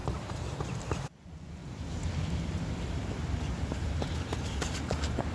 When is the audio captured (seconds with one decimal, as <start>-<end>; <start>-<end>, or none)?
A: 0.0-1.2; 1.6-4.8